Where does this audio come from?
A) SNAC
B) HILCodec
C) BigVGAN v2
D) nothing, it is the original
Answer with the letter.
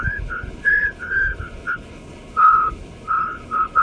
B